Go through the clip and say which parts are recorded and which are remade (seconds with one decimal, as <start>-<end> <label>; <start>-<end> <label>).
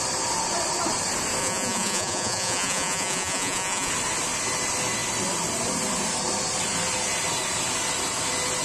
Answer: 0.0-1.4 recorded; 1.4-3.9 remade; 3.9-8.6 recorded